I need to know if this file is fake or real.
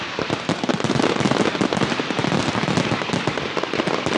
real